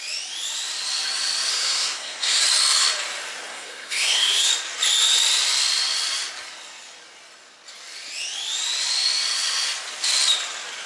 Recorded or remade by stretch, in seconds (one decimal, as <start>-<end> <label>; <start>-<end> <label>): 0.0-1.5 recorded; 1.5-2.4 remade; 2.4-3.5 recorded; 3.5-4.5 remade; 4.5-10.9 recorded